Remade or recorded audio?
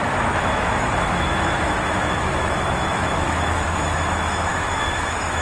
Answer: remade